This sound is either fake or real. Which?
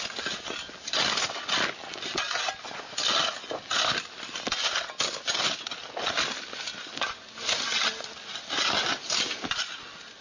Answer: real